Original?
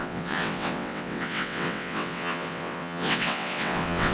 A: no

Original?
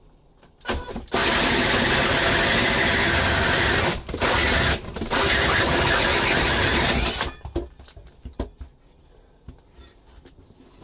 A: yes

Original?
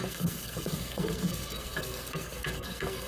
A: no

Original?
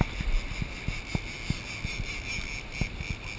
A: yes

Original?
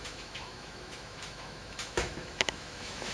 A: no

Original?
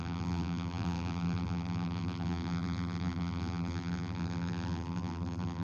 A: no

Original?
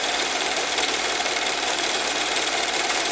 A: no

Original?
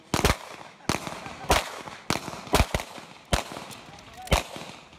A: yes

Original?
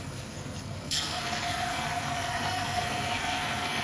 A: no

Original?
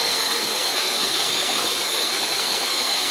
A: no